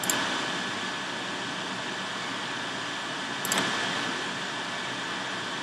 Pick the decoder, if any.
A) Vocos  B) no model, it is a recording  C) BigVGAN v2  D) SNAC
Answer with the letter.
B